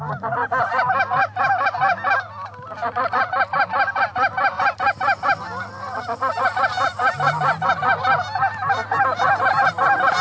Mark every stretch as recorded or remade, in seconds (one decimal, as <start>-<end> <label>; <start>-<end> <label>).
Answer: 0.0-6.9 recorded; 6.9-7.8 remade; 7.8-10.2 recorded